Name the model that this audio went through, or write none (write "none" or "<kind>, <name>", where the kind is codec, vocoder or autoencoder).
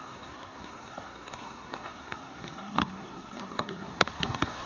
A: codec, SNAC